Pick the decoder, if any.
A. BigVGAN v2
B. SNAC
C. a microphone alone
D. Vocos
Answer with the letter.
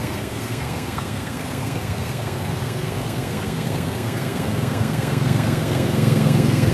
B